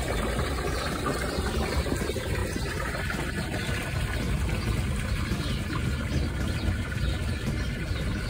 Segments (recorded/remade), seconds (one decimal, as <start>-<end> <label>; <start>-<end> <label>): 0.0-8.3 recorded